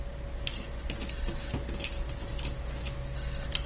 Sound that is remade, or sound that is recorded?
recorded